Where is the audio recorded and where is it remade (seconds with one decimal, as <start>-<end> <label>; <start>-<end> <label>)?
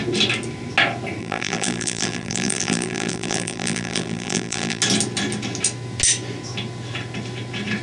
0.0-1.2 recorded; 1.2-4.8 remade; 4.8-7.8 recorded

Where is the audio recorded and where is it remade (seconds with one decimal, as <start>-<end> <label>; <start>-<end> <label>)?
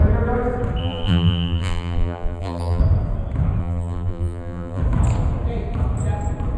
0.0-0.8 recorded; 0.8-2.8 remade; 2.8-3.6 recorded; 3.6-4.8 remade; 4.8-6.6 recorded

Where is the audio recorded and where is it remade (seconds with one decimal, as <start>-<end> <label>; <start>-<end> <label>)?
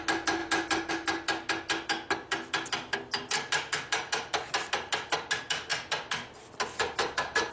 0.0-7.5 recorded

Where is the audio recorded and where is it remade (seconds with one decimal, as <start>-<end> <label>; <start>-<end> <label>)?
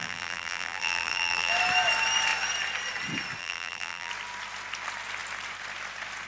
0.0-1.5 remade; 1.5-3.4 recorded; 3.4-4.1 remade; 4.1-6.3 recorded